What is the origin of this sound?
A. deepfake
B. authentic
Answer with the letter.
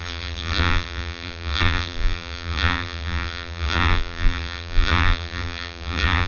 A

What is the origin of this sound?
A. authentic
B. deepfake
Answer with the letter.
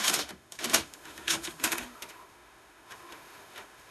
B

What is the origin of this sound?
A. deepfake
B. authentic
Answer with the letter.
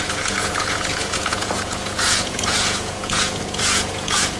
A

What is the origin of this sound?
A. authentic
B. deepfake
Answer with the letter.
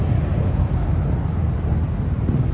A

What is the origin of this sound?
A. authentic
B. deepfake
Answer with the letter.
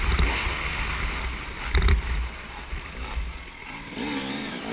A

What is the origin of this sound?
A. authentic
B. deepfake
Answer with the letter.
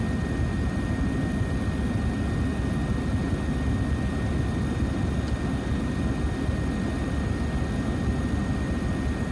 A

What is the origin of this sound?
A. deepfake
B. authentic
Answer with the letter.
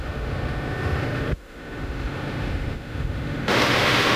A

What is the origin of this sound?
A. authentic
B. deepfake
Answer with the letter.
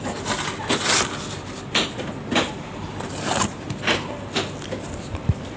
A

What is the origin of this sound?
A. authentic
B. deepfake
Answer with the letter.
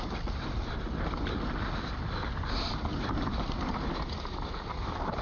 A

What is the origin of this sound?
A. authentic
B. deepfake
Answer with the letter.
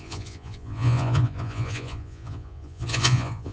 B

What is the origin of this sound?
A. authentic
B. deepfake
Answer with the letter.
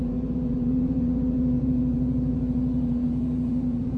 B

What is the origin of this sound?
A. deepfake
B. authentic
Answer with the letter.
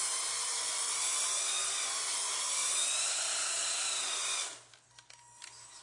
B